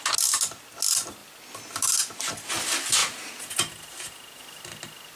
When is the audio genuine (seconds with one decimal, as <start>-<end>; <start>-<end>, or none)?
0.0-3.0; 4.4-5.2